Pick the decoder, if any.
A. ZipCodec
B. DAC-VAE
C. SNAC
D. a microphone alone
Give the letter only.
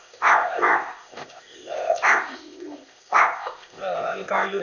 A